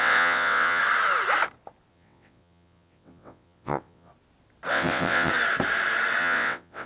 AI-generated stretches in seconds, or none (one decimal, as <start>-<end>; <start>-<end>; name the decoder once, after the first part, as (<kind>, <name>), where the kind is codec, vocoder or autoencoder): 0.0-0.8 (vocoder, WaveNeXt); 1.9-4.1; 4.7-5.3; 6.2-6.9